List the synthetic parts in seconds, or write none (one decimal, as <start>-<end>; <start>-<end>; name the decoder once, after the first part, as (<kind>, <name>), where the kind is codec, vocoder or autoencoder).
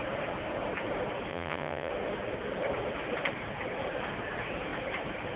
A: 1.3-1.9 (vocoder, HiFi-GAN)